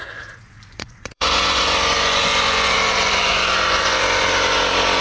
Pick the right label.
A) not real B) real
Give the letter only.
A